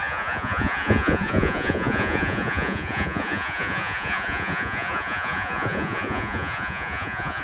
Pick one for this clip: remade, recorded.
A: remade